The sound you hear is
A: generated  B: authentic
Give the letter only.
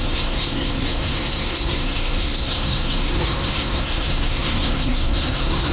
A